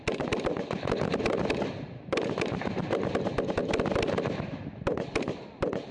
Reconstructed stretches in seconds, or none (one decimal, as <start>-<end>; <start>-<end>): none